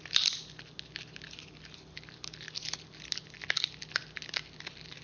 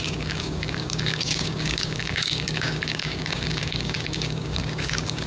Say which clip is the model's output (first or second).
second